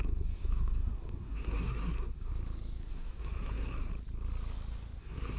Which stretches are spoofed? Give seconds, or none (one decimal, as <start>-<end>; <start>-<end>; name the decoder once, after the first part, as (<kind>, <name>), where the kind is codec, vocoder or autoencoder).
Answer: 0.0-2.3 (codec, SNAC); 2.9-3.9; 5.0-5.4